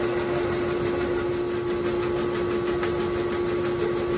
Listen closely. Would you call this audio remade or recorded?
recorded